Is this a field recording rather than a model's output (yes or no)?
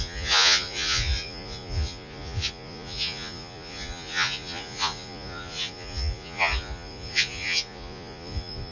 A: no